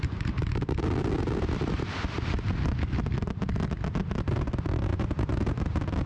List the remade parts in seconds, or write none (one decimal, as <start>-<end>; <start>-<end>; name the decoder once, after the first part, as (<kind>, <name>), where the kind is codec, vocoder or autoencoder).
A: 0.0-0.5 (vocoder, BigVGAN v2); 4.2-4.9